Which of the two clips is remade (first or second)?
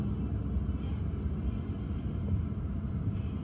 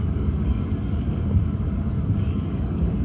second